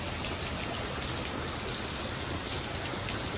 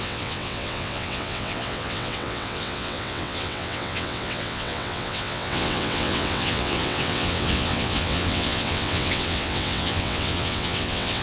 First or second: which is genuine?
first